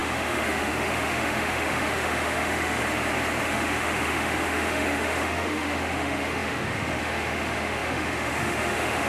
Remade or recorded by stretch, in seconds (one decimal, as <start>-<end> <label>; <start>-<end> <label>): 0.0-2.8 remade; 2.8-3.4 recorded; 3.4-9.1 remade